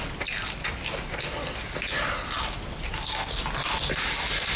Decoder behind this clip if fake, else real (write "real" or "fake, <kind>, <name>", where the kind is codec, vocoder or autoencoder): real